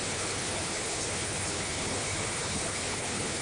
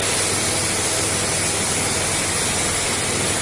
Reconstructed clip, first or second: first